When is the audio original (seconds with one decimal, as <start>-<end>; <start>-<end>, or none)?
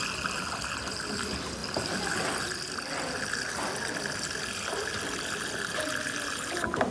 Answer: 0.0-6.9